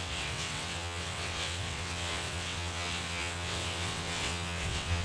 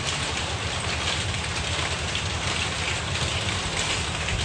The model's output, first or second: first